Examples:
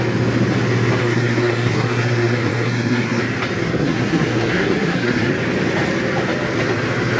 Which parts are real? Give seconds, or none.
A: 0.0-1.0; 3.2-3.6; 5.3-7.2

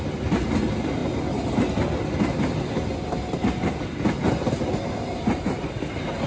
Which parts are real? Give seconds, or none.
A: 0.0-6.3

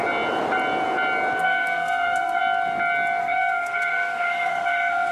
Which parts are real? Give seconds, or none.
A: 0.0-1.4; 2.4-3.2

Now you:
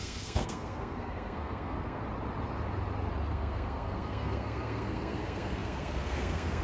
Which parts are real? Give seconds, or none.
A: 2.0-3.3

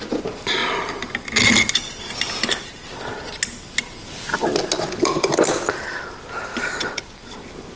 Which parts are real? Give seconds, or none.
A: 0.0-7.8